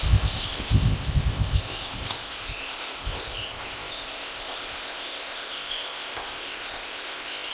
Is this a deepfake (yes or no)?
yes